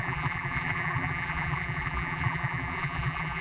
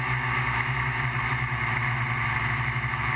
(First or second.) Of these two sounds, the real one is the second